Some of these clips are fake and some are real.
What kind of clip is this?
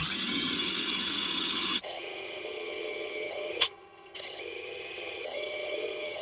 fake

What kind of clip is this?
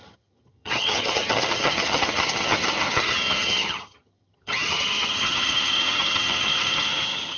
fake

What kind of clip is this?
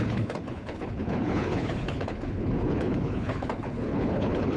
fake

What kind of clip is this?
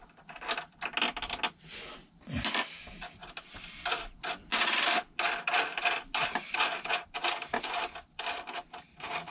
real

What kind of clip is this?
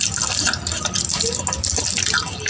real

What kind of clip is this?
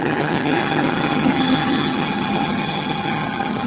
fake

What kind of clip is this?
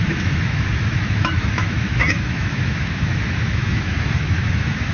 fake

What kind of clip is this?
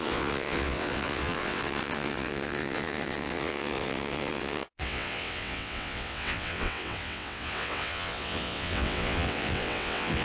fake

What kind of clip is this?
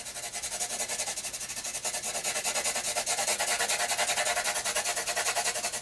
real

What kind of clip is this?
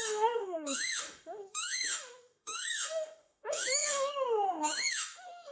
fake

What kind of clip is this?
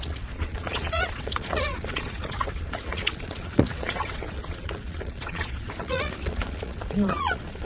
fake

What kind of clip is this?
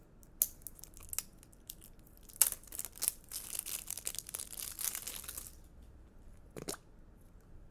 real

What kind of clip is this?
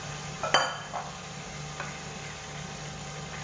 real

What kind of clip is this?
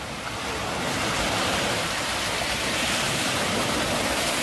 fake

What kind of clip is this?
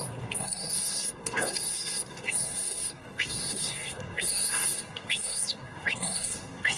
fake